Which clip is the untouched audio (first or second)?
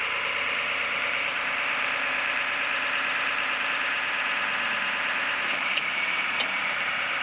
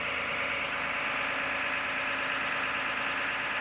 second